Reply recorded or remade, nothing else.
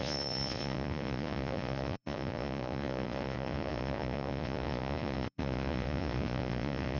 remade